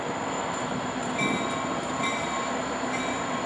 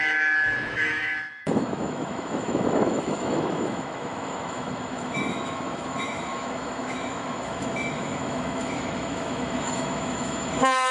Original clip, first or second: first